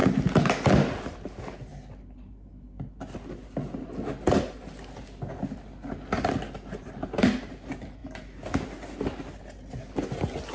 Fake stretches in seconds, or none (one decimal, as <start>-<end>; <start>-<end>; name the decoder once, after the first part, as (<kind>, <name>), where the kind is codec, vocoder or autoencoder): none